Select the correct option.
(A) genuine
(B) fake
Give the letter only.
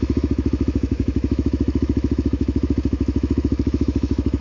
B